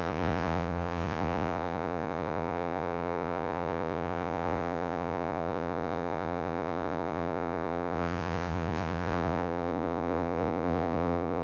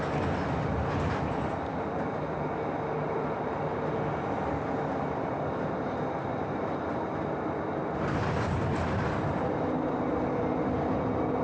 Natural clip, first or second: second